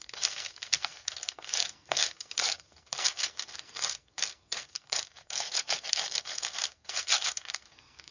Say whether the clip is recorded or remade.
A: remade